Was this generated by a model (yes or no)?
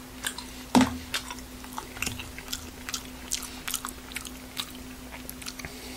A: no